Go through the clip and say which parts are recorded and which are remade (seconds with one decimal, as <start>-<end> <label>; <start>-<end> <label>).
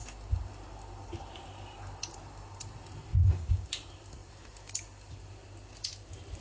0.0-3.1 recorded; 3.1-3.7 remade; 3.7-6.4 recorded